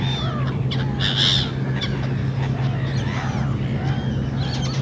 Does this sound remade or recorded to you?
recorded